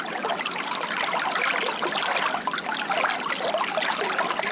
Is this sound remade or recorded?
recorded